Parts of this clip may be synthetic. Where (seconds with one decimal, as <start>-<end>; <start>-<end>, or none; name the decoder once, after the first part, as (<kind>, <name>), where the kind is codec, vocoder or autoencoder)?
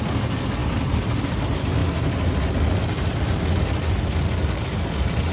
none